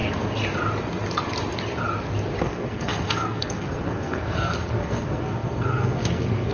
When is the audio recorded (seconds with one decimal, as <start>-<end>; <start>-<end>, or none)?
0.0-2.4

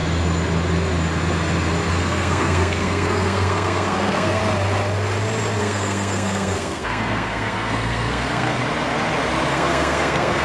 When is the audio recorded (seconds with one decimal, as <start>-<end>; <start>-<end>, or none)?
0.0-1.9; 4.4-5.6; 8.6-9.5

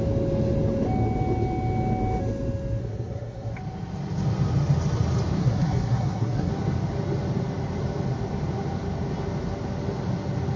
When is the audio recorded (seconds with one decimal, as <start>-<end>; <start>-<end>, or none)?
0.0-2.8; 3.5-5.4; 6.5-10.6

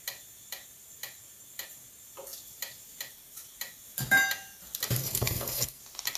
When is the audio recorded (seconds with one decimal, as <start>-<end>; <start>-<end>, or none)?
0.0-5.0; 5.8-6.2

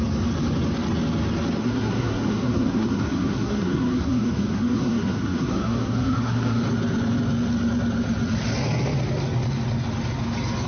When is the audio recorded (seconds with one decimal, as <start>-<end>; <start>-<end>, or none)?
0.0-1.6; 6.6-10.7

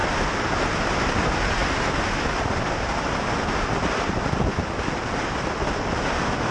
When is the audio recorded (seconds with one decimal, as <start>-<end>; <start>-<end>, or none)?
0.0-6.5

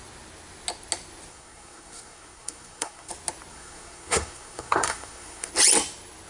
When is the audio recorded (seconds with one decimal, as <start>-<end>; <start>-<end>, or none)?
0.0-1.3; 3.1-3.5; 5.5-6.3